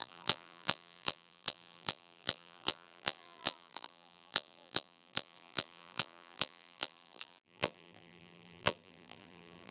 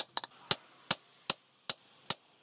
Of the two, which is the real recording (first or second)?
second